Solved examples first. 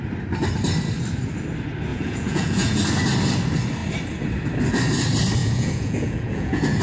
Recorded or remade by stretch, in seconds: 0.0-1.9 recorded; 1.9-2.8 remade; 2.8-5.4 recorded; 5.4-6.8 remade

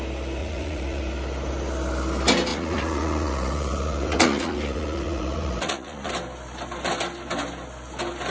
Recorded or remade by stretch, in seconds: 0.0-0.4 recorded; 0.4-1.0 remade; 1.0-2.5 recorded; 2.5-6.1 remade; 6.1-8.3 recorded

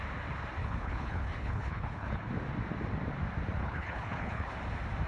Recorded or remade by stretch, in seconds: 0.0-0.6 recorded; 0.6-2.3 remade; 2.3-3.6 recorded; 3.6-4.5 remade; 4.5-5.1 recorded